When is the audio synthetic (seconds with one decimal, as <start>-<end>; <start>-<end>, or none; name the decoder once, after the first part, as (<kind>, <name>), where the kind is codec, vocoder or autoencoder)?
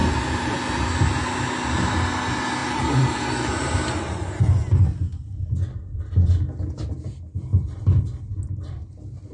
0.0-0.6 (vocoder, BigVGAN v2); 2.6-3.7